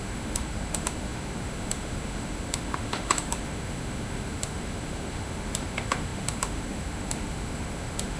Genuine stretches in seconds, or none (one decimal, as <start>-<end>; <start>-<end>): none